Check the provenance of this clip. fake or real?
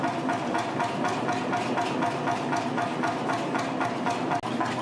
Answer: real